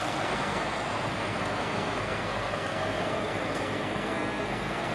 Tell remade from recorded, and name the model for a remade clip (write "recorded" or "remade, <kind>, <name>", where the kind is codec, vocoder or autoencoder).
remade, codec, SNAC